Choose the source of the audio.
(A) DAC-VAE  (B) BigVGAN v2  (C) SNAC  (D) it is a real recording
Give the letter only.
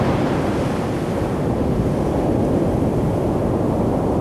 D